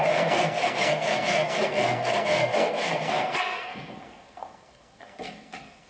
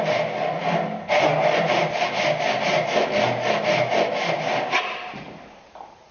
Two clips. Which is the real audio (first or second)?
second